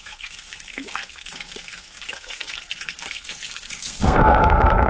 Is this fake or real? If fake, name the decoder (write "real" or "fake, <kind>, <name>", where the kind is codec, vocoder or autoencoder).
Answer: fake, codec, SNAC